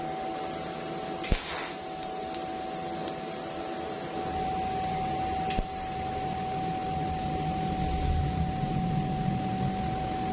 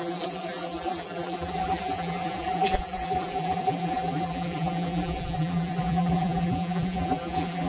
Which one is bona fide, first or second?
first